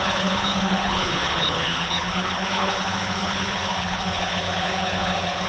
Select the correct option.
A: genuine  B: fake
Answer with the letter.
B